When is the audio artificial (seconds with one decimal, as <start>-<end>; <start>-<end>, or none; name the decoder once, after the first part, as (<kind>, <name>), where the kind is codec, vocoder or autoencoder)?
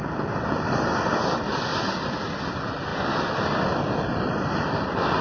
0.0-1.7 (vocoder, BigVGAN v2); 2.4-5.2